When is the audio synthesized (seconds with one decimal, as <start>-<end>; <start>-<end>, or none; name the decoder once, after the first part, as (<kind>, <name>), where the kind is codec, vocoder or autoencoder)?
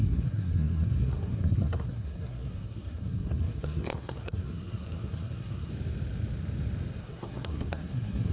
0.0-5.7 (codec, SNAC); 7.0-8.3